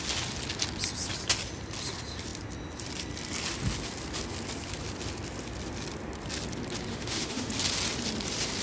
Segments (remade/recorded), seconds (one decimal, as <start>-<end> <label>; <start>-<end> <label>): 0.0-6.9 recorded; 6.9-7.5 remade; 7.5-8.6 recorded